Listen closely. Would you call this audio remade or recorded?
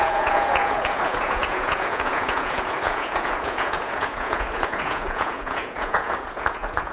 remade